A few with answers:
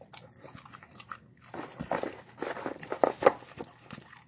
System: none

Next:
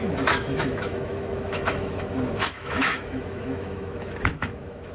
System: autoencoder, DAC-VAE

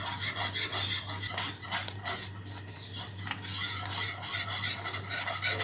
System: none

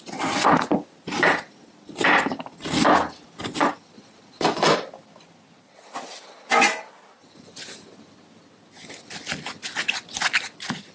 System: none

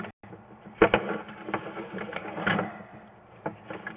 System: none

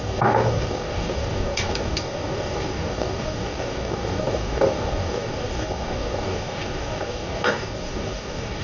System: codec, DAC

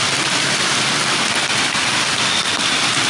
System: none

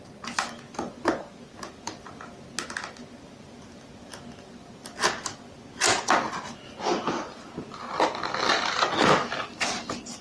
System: none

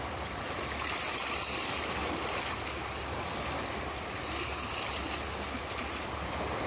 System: none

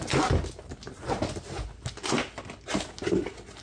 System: none